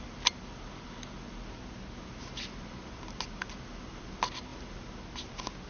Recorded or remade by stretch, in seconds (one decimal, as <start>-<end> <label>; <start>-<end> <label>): 0.0-5.7 recorded